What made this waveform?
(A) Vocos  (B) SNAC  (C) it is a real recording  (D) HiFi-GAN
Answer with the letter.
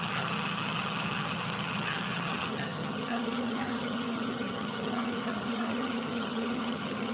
D